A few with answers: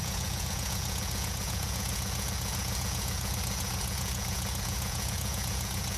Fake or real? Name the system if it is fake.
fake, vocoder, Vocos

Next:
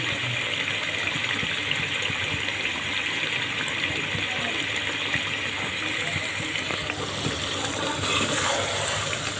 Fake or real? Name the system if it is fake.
real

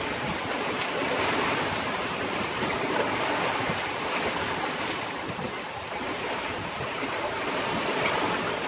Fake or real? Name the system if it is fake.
real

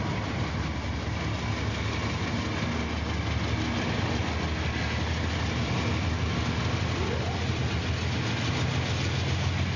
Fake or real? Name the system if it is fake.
real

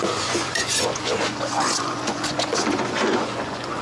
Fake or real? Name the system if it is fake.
fake, vocoder, Vocos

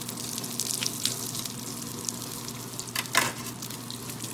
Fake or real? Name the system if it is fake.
real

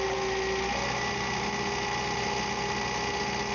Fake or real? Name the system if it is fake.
real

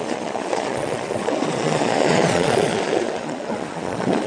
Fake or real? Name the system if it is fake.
fake, vocoder, Vocos